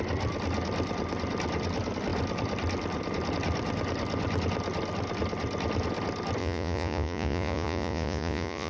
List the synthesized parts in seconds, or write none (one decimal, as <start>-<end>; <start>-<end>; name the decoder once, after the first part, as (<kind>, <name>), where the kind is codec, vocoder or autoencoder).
6.4-8.7 (vocoder, Vocos)